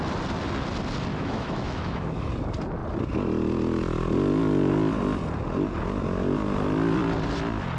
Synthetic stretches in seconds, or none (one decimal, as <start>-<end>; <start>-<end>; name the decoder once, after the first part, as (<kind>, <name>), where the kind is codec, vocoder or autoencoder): 1.1-2.3 (autoencoder, DAC-VAE)